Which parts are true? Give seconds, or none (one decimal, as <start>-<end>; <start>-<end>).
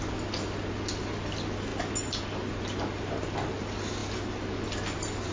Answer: 0.0-5.3